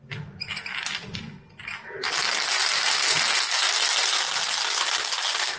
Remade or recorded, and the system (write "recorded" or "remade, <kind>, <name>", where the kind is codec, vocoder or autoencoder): recorded